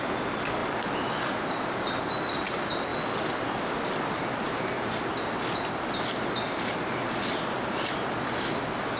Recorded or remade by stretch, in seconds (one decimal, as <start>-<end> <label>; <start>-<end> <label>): 0.0-9.0 recorded

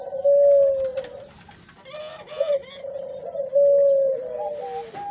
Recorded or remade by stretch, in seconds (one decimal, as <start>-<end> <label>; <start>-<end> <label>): 0.0-5.1 recorded

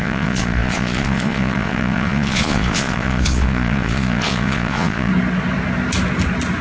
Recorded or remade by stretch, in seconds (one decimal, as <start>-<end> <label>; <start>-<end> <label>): 0.0-5.1 remade; 5.1-6.6 recorded

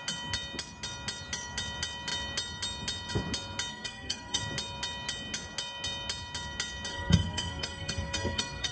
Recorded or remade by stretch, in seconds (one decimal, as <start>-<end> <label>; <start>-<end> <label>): 0.0-3.7 recorded; 3.7-4.4 remade; 4.4-6.9 recorded; 6.9-8.7 remade

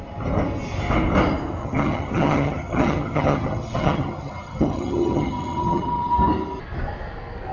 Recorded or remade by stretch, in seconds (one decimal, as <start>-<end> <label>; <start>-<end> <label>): 0.0-1.6 recorded; 1.6-6.1 remade; 6.1-7.5 recorded

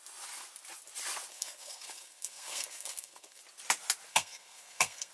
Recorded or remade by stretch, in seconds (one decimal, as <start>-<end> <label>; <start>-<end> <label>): 0.0-1.3 recorded; 1.3-3.4 remade; 3.4-4.1 recorded; 4.1-5.1 remade

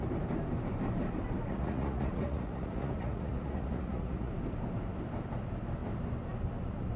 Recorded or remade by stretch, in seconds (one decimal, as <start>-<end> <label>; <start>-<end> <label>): 0.0-1.5 recorded; 1.5-4.3 remade; 4.3-7.0 recorded

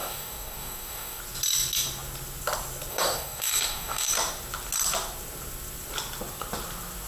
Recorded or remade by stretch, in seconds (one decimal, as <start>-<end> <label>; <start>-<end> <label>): 0.0-1.2 remade; 1.2-2.9 recorded; 2.9-4.1 remade; 4.1-7.1 recorded